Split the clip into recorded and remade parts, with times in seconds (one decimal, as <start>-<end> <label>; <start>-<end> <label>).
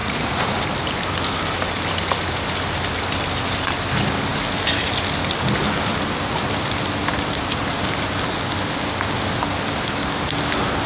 0.0-0.5 remade; 0.5-10.9 recorded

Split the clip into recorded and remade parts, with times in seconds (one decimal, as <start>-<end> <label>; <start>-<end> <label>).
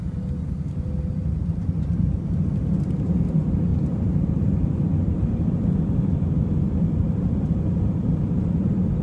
0.0-9.0 recorded